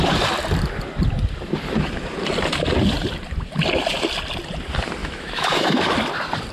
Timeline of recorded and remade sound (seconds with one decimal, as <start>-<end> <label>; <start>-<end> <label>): 0.0-5.0 recorded; 5.0-5.8 remade; 5.8-6.5 recorded